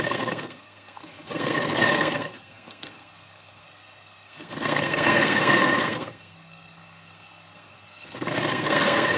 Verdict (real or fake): fake